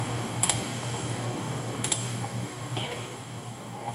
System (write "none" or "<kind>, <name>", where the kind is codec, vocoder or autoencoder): codec, DAC